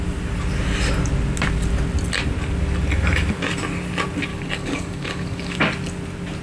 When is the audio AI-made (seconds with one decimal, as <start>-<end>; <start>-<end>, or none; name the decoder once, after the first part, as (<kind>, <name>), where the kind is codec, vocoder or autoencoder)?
4.3-5.6 (codec, DAC)

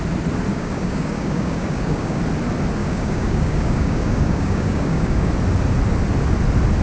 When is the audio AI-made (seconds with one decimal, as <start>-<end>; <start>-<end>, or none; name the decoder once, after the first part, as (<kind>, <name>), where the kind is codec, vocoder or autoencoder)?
0.5-2.2 (codec, DAC); 2.8-5.3